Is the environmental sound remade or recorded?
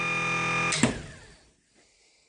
recorded